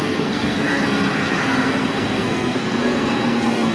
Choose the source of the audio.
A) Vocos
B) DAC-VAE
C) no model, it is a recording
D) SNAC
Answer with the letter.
D